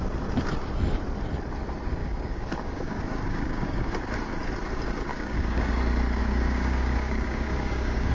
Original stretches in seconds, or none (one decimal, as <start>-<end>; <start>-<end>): 0.0-2.0; 3.9-5.1; 5.7-6.2